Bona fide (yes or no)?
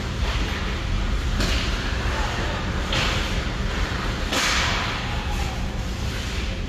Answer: yes